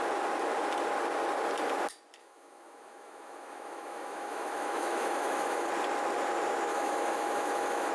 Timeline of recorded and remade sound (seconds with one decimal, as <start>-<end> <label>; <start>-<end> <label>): 0.0-2.2 recorded; 2.2-5.7 remade; 5.7-6.7 recorded; 6.7-7.9 remade